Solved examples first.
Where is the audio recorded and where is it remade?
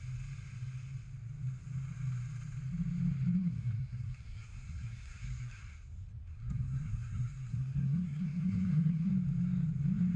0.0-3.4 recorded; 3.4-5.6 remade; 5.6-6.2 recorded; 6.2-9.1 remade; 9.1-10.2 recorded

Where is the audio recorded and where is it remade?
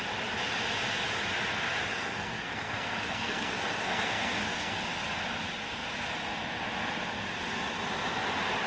0.0-1.9 recorded; 1.9-4.8 remade; 4.8-8.7 recorded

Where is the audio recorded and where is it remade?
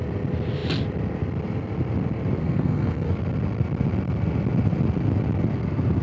0.0-2.4 recorded; 2.4-3.1 remade; 3.1-6.0 recorded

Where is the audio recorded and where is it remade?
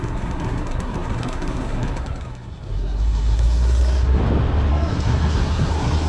0.0-4.2 remade; 4.2-4.7 recorded; 4.7-6.1 remade